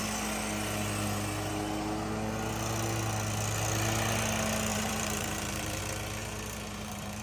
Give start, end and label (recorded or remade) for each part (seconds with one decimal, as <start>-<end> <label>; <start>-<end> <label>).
0.0-4.7 recorded; 4.7-5.8 remade; 5.8-6.2 recorded; 6.2-7.2 remade